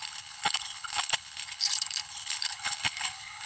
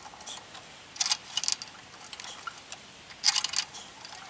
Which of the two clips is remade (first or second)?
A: first